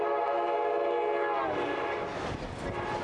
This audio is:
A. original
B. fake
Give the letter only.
A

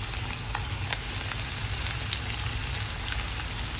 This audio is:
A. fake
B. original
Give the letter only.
B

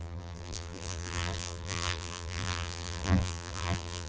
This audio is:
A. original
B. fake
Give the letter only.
B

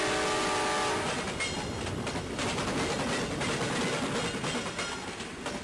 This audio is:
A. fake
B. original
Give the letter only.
B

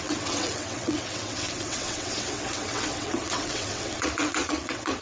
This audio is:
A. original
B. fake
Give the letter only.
B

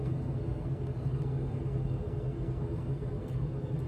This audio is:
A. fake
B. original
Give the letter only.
A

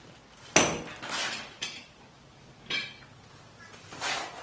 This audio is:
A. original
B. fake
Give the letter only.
A